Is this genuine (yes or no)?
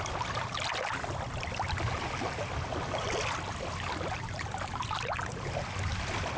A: yes